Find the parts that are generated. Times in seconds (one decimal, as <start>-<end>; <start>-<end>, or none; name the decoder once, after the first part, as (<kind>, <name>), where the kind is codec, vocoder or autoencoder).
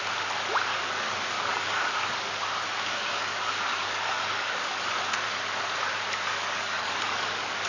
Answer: 0.7-4.9 (codec, DAC); 6.3-7.7